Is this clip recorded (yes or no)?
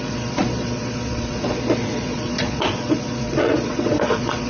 no